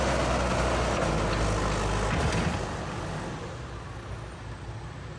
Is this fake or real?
real